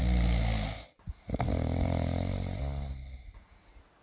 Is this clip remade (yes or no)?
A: no